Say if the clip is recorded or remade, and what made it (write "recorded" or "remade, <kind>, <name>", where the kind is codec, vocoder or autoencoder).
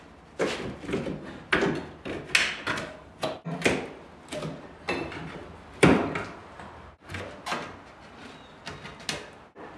recorded